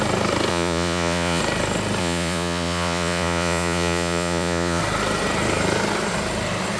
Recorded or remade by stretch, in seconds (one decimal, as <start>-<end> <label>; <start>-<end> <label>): 0.0-0.5 recorded; 0.5-1.4 remade; 1.4-2.0 recorded; 2.0-4.8 remade; 4.8-6.8 recorded